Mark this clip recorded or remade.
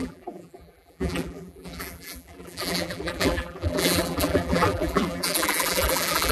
remade